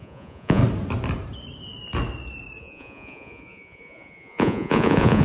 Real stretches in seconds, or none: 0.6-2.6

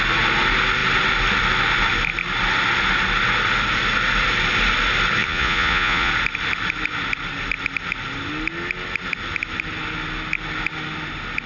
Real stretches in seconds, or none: 0.0-5.2; 6.1-11.5

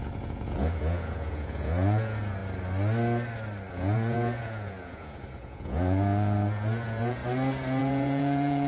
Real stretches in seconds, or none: 2.4-3.7; 7.2-7.8

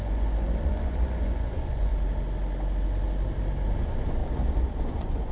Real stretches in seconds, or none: 1.9-3.8; 4.2-4.8

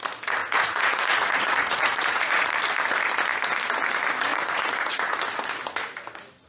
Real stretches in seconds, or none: 0.0-0.4; 2.5-4.3; 5.2-6.5

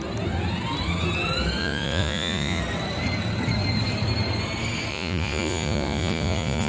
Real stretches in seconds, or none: 0.0-1.6; 2.6-4.9

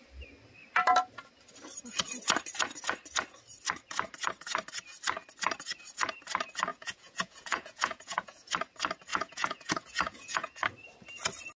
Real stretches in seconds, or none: 0.0-6.7; 8.5-9.1; 10.6-11.6

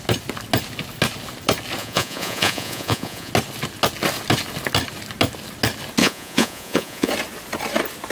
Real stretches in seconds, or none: 0.0-1.8; 3.3-6.0; 7.1-8.1